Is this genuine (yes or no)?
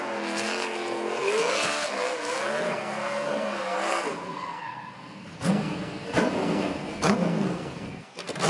no